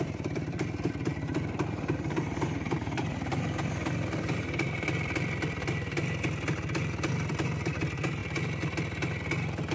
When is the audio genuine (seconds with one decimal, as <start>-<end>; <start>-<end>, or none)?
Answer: 8.2-9.7